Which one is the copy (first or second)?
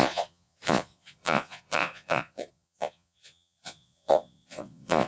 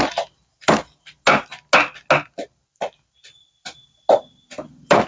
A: first